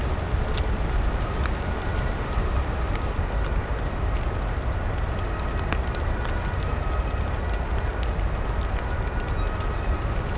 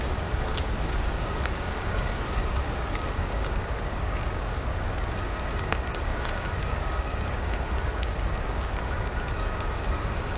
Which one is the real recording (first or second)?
first